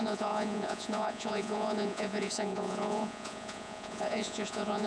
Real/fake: fake